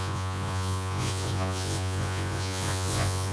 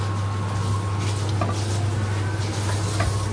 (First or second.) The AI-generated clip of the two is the first